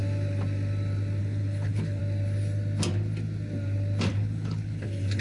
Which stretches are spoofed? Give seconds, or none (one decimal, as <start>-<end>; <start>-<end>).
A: 1.2-2.0; 4.1-5.2